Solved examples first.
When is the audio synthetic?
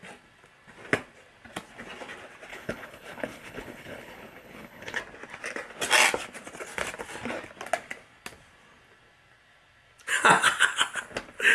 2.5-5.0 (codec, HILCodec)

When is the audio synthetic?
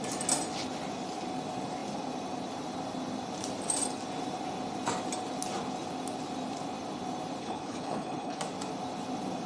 7.4-8.4 (codec, HILCodec)